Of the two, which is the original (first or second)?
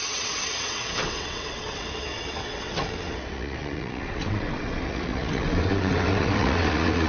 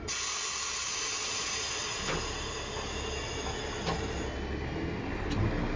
second